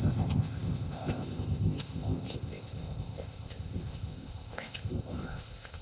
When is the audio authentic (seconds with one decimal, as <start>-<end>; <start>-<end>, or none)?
none